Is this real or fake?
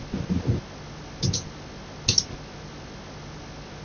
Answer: real